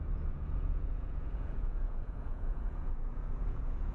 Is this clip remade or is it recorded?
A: remade